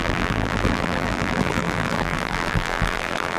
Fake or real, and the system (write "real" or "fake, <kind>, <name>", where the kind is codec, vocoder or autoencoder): fake, vocoder, BigVGAN v2